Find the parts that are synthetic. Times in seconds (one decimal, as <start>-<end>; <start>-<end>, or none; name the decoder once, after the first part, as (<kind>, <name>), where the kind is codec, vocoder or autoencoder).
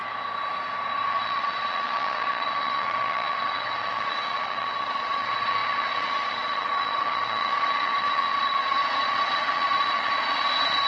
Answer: 1.1-10.9 (vocoder, Vocos)